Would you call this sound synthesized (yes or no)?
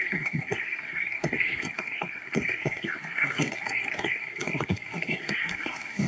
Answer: yes